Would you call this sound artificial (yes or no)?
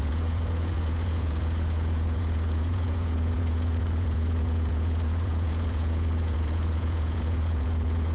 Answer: yes